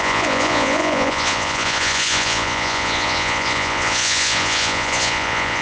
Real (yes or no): no